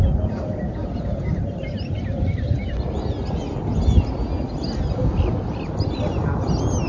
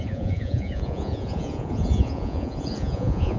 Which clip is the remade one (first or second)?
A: second